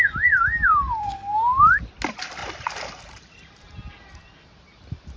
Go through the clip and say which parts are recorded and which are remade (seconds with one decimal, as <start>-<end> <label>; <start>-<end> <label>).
0.0-1.0 recorded; 1.0-1.6 remade; 1.6-5.2 recorded